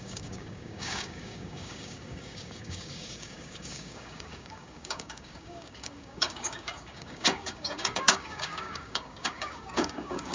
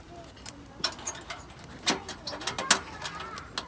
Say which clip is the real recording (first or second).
second